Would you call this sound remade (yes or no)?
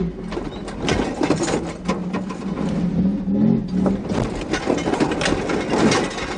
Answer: no